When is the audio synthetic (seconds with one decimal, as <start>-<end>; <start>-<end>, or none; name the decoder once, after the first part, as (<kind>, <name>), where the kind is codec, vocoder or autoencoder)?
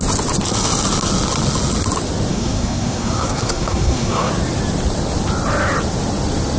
2.3-4.3 (codec, SNAC)